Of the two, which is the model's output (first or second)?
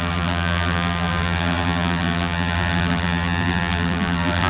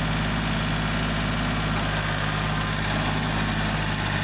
first